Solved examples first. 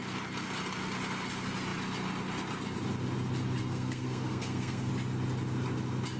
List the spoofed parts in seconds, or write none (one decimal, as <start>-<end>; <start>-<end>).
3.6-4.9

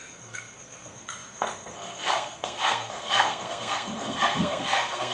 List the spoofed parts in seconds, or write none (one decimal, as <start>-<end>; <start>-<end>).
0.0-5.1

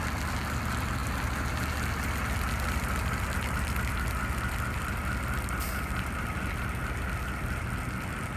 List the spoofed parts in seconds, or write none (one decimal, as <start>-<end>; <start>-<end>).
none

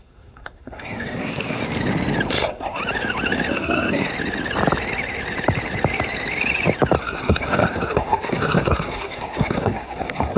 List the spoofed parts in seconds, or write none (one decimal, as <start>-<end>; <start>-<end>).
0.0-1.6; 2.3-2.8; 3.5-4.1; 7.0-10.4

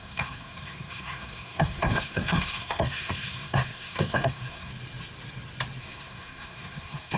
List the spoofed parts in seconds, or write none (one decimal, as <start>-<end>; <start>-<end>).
0.0-4.7; 5.8-7.2